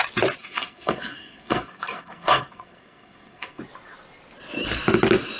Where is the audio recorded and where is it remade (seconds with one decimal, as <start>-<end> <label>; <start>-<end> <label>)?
0.0-0.4 recorded; 0.4-3.6 remade; 3.6-5.4 recorded